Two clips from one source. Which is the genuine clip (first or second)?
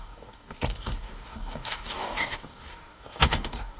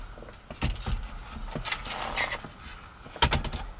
second